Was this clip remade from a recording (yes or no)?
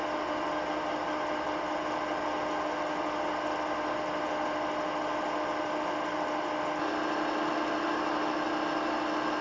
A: no